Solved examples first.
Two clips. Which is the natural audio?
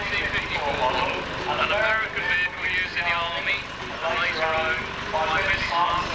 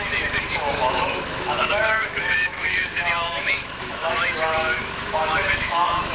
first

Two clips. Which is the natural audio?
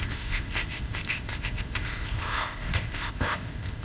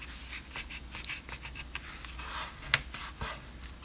second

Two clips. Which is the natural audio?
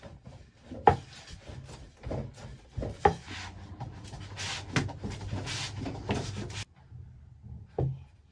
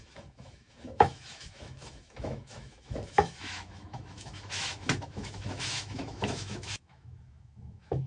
first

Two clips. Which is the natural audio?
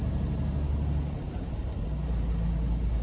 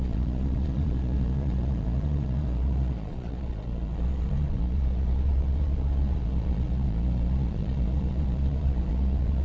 first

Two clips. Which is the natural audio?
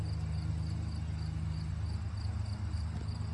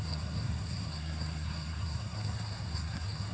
first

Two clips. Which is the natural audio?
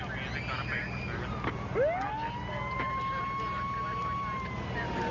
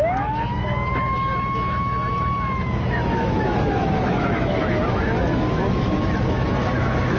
first